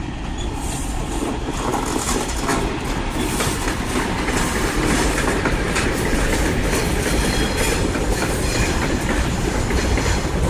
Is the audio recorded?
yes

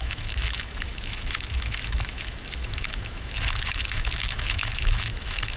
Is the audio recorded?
no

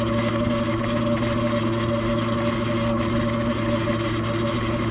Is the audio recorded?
yes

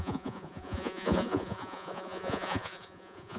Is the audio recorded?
no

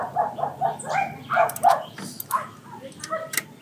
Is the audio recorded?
yes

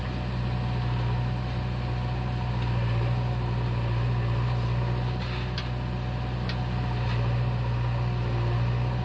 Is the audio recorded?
yes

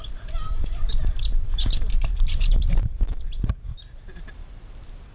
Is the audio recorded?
no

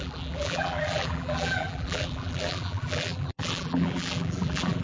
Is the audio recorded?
no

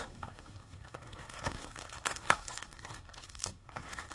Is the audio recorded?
no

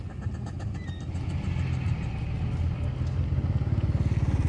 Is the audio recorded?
yes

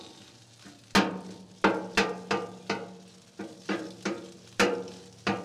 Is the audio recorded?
yes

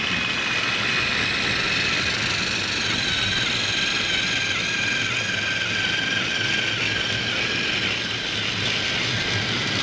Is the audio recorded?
yes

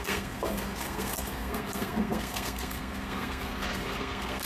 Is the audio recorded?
no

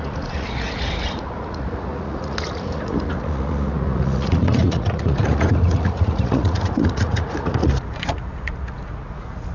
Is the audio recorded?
no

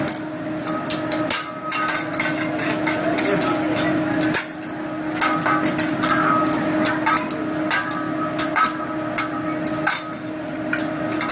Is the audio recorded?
yes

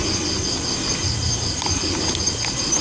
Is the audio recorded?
yes